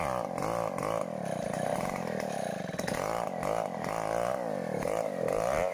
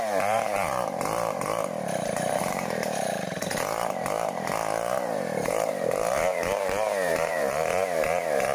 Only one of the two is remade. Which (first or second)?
second